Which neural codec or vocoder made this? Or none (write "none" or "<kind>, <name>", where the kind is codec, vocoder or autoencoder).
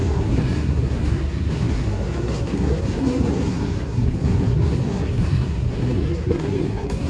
codec, SNAC